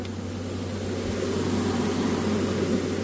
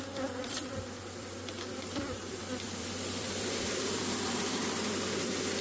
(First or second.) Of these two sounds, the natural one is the first